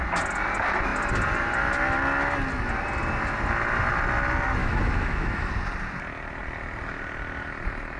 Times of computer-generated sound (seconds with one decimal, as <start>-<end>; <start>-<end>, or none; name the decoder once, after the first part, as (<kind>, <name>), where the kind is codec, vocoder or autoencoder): 4.6-5.5 (autoencoder, DAC-VAE)